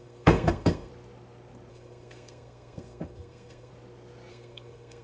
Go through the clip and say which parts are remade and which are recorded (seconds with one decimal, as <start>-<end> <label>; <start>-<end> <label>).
0.0-0.9 remade; 0.9-1.7 recorded; 1.7-3.7 remade; 3.7-4.3 recorded; 4.3-5.0 remade